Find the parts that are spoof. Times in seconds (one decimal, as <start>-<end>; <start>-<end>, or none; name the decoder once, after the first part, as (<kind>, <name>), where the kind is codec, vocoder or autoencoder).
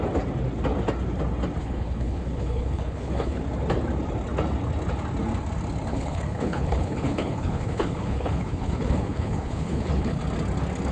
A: 1.6-3.4 (codec, HILCodec); 5.9-10.2